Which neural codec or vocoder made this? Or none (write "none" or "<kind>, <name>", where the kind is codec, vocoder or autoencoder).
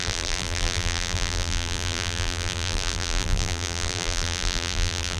vocoder, BigVGAN v2